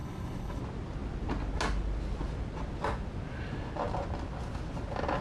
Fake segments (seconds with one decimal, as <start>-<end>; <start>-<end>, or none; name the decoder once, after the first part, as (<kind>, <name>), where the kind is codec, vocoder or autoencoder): 0.0-0.6 (codec, HILCodec)